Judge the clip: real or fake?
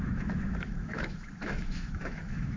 fake